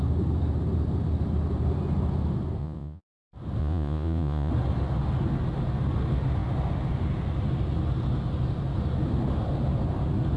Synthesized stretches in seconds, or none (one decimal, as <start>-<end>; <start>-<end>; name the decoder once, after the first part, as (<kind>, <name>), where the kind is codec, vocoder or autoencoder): 2.6-3.1 (vocoder, Vocos); 3.6-4.5